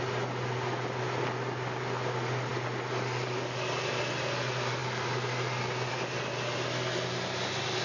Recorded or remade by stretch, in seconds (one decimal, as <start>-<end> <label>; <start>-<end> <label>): 0.0-7.8 recorded